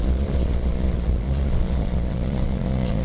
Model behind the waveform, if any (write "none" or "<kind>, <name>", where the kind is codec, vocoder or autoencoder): vocoder, Vocos